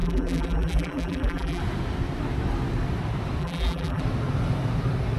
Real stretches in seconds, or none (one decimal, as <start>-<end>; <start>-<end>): 1.6-3.4; 4.0-5.2